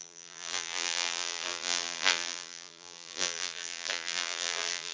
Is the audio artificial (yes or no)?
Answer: yes